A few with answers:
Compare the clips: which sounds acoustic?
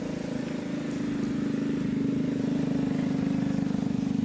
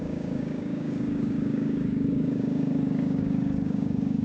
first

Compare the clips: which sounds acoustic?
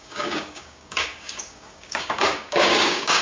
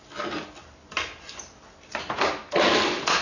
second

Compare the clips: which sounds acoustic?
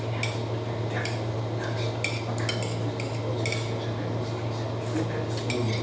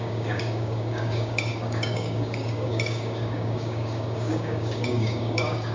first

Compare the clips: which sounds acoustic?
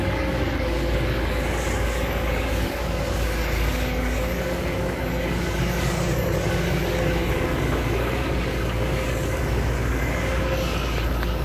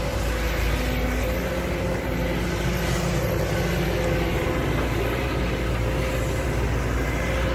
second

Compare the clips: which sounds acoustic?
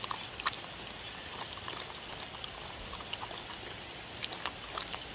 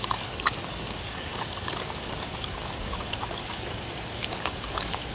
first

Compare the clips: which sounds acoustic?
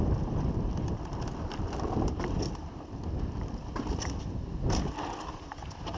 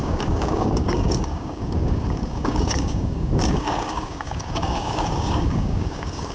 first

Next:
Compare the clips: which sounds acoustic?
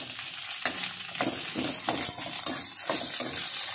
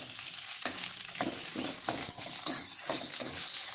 first